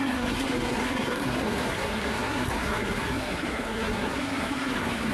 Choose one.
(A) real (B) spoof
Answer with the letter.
B